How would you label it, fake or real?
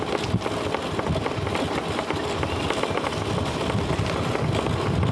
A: real